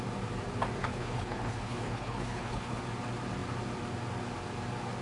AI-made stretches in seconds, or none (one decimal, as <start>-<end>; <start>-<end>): 0.8-2.8